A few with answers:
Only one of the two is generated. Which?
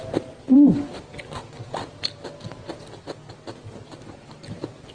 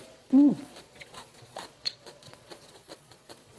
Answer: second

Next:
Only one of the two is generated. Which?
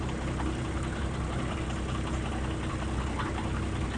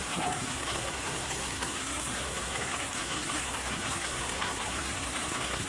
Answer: second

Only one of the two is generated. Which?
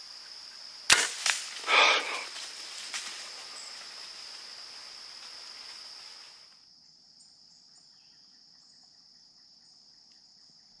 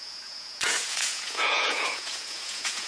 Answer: second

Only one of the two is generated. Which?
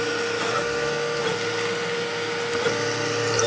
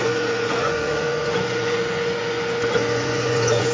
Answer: second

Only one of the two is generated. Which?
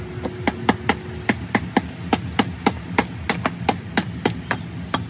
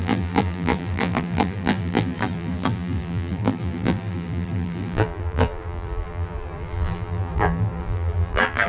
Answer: second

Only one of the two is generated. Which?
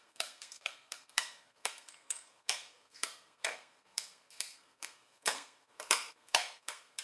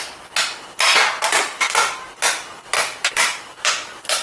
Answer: first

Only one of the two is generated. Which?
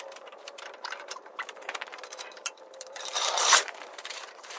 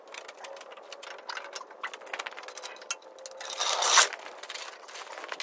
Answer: first